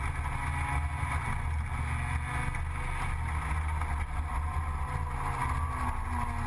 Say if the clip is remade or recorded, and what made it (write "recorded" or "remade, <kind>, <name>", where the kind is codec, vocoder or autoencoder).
recorded